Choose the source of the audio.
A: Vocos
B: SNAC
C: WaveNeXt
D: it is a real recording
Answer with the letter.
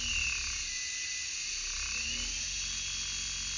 D